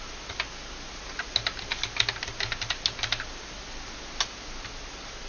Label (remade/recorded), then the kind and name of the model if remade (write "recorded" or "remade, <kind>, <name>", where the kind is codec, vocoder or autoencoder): recorded